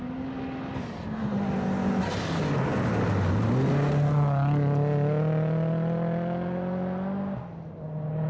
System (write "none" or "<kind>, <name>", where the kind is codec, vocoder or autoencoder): none